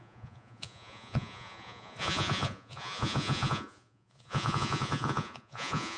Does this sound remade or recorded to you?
remade